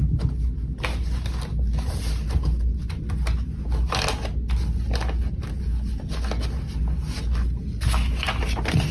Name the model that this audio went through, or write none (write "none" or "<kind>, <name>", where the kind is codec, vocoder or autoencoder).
none